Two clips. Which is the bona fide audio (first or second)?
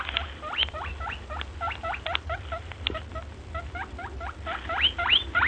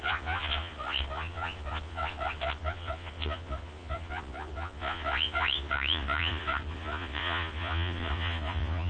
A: first